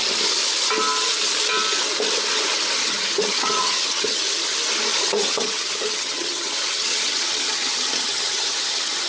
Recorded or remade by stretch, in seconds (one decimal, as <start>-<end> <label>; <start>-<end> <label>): 0.0-2.8 recorded; 2.8-4.2 remade; 4.2-5.0 recorded; 5.0-9.1 remade